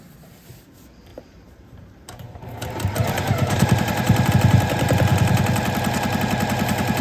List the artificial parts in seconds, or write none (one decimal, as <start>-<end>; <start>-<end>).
1.1-4.3